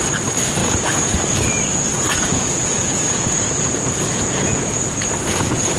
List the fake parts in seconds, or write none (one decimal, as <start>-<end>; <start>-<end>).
0.6-1.2; 1.9-5.8